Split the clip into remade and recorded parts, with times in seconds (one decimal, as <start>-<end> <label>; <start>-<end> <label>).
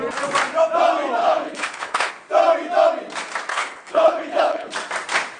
0.0-1.2 recorded; 1.2-2.1 remade; 2.1-3.5 recorded; 3.5-4.7 remade; 4.7-5.4 recorded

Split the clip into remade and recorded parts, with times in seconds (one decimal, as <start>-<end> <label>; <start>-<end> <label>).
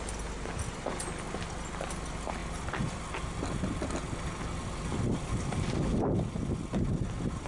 0.0-7.5 recorded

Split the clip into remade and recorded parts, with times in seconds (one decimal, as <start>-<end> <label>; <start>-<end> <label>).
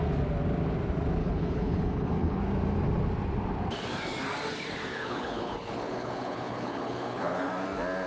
0.0-1.2 recorded; 1.2-2.4 remade; 2.4-4.9 recorded; 4.9-7.5 remade; 7.5-8.1 recorded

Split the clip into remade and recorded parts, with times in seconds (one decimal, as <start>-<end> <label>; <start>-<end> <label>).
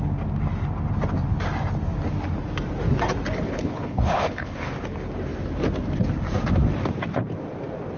0.0-3.5 recorded; 3.5-4.7 remade; 4.7-8.0 recorded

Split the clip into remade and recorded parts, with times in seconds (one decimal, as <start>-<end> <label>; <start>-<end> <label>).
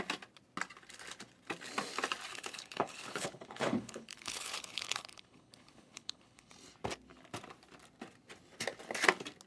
0.0-2.3 recorded; 2.3-6.5 remade; 6.5-9.5 recorded